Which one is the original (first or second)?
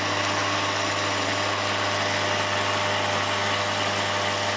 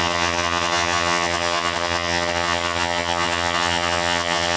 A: first